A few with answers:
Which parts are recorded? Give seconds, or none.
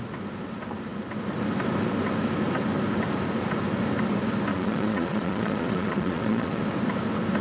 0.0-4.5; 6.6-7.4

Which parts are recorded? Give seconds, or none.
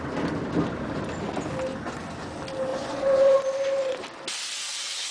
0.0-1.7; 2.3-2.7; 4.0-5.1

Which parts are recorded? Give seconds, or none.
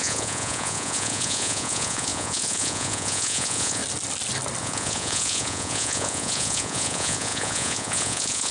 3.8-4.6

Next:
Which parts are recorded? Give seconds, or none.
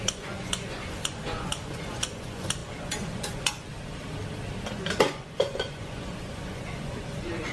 3.7-4.7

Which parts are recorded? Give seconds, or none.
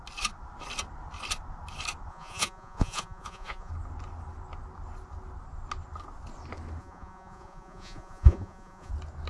0.0-2.1; 3.7-6.8; 8.9-9.3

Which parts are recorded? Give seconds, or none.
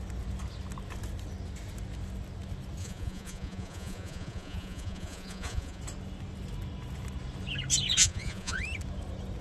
0.0-2.8; 5.8-8.0; 8.6-9.4